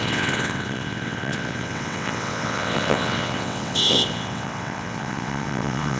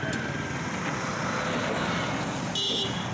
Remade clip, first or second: first